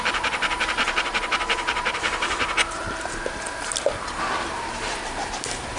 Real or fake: fake